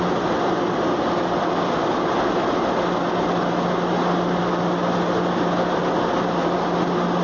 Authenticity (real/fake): real